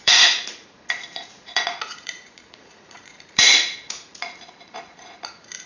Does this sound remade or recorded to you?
remade